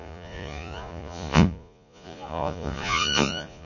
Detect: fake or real fake